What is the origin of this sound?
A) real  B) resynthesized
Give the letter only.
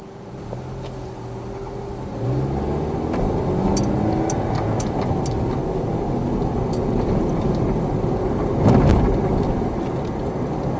A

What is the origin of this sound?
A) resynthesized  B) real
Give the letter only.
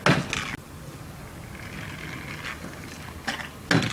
B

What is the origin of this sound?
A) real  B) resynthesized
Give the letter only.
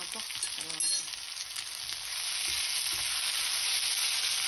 A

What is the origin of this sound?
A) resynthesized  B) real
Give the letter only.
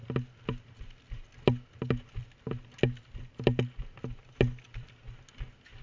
B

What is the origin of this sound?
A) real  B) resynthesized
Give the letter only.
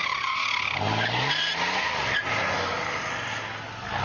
A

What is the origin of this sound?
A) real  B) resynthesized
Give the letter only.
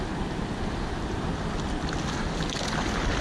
A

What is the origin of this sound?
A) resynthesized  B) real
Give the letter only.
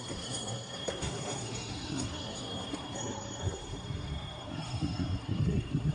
A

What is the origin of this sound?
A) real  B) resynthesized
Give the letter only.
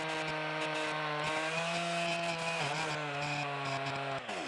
A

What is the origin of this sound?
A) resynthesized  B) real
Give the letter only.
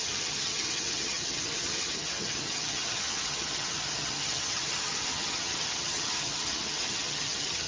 A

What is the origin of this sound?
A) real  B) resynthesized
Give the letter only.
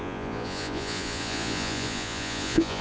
B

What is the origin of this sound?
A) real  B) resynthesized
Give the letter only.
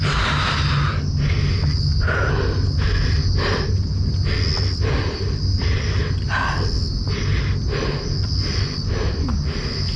A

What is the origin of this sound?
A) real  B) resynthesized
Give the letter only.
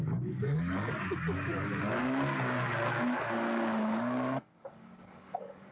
B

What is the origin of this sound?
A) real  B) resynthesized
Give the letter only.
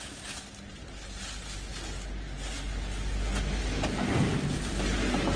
A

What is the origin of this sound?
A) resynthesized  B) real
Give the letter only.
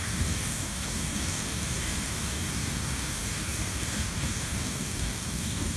A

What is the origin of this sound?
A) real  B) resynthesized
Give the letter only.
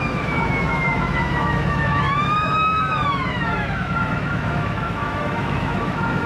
B